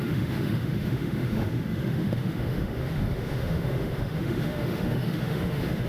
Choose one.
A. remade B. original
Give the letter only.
A